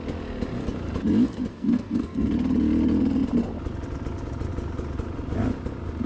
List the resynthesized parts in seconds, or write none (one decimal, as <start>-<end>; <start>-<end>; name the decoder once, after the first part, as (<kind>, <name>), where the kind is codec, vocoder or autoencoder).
1.5-2.3 (codec, SNAC)